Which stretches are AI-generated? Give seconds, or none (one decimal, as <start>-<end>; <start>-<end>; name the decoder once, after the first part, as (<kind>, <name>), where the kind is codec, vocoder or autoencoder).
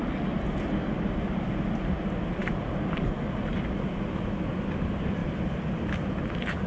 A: 2.4-4.0 (vocoder, BigVGAN v2)